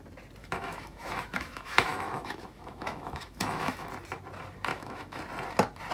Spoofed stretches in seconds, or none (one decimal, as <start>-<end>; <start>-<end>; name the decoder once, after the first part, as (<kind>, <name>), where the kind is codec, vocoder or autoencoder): 0.4-3.9 (autoencoder, DAC-VAE); 4.7-5.2